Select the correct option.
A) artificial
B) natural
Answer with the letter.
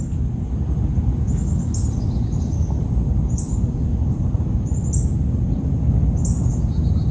B